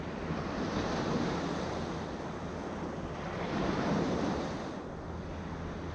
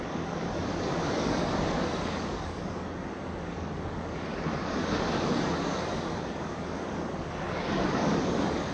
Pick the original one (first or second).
first